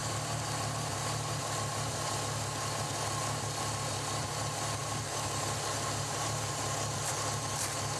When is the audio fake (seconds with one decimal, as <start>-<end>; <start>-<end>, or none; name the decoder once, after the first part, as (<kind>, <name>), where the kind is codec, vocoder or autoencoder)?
none